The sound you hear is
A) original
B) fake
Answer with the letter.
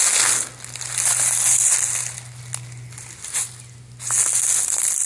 A